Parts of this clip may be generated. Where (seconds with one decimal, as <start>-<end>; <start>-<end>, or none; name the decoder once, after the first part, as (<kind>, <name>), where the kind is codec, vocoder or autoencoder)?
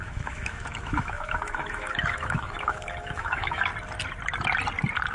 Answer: 0.0-3.7 (autoencoder, DAC-VAE)